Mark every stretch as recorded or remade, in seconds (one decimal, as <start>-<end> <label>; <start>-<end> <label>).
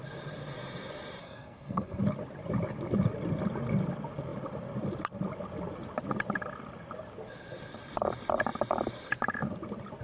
0.0-1.2 recorded; 1.2-2.0 remade; 2.0-10.0 recorded